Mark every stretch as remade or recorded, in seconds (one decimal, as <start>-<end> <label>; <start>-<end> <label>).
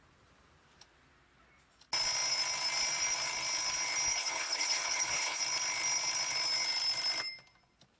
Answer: 0.0-4.1 recorded; 4.1-5.4 remade; 5.4-8.0 recorded